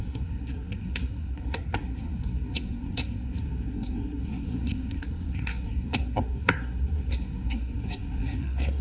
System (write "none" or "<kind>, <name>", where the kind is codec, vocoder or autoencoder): codec, SNAC